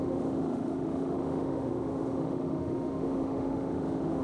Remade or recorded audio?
remade